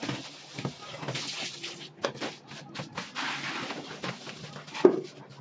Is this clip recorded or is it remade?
recorded